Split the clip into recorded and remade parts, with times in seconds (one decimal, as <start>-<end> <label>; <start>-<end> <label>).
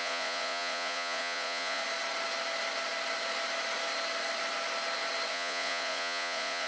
0.0-1.8 remade; 1.8-5.3 recorded; 5.3-6.7 remade